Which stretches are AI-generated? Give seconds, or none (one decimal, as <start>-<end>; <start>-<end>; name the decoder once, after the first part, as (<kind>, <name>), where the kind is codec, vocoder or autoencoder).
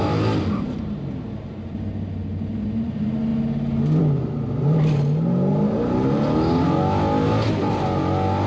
none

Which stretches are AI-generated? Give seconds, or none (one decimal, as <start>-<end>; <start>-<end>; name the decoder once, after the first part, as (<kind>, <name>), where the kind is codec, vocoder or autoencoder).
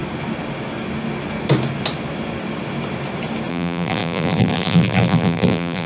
3.5-5.9 (vocoder, BigVGAN v2)